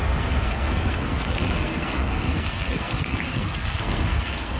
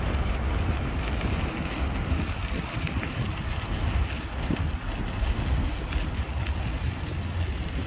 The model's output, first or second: first